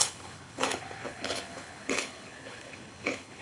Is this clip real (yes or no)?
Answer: no